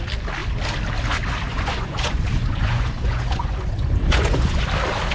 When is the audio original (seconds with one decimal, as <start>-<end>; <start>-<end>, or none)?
0.0-1.5; 4.6-5.1